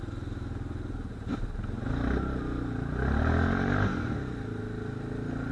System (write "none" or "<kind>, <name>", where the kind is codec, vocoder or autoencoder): none